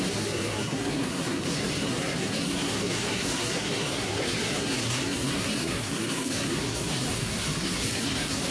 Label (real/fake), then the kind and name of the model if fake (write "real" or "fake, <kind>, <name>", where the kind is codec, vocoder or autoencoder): fake, codec, SNAC